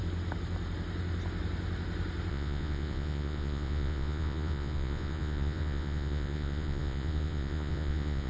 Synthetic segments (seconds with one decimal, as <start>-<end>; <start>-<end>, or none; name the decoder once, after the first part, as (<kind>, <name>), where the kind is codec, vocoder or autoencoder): 2.3-8.3 (vocoder, Vocos)